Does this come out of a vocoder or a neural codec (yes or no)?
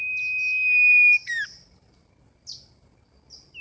no